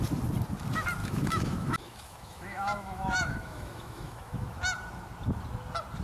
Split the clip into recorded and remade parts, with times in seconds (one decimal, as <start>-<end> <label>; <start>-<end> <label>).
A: 0.0-1.0 recorded; 1.0-4.6 remade; 4.6-6.0 recorded

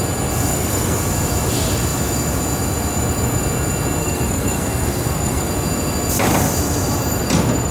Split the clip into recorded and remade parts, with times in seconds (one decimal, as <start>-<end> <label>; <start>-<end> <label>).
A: 0.0-0.5 recorded; 0.5-1.0 remade; 1.0-4.0 recorded; 4.0-5.5 remade; 5.5-7.7 recorded

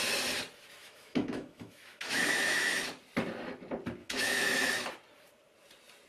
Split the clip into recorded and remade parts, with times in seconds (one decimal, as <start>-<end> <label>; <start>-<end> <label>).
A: 0.0-0.8 recorded; 0.8-2.8 remade; 2.8-4.0 recorded; 4.0-4.7 remade; 4.7-6.1 recorded

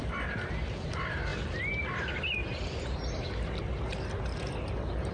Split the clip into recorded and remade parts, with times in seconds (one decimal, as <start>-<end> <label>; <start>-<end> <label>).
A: 0.0-5.1 recorded

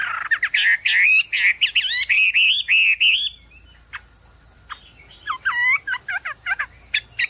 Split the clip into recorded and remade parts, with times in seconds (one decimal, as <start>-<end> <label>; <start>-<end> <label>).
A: 0.0-7.3 recorded

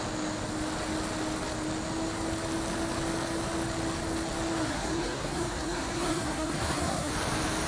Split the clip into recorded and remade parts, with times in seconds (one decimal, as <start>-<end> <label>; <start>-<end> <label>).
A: 0.0-4.6 recorded; 4.6-7.1 remade; 7.1-7.7 recorded

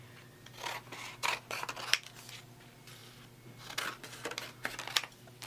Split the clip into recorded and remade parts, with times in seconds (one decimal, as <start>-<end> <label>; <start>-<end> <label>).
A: 0.0-5.5 recorded

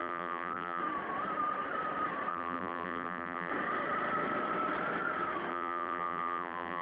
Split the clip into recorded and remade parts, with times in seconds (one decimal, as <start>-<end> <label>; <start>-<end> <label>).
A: 0.0-0.8 remade; 0.8-2.3 recorded; 2.3-3.5 remade; 3.5-5.5 recorded; 5.5-6.8 remade